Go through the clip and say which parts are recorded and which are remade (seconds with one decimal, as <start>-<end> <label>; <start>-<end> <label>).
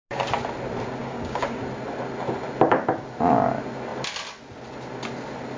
0.0-1.0 recorded; 1.0-1.6 remade; 1.6-5.6 recorded